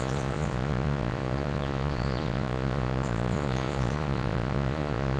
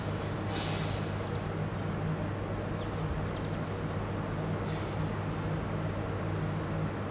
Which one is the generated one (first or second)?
first